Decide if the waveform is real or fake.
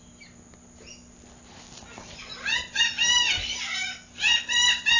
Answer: real